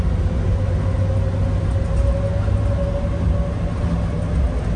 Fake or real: real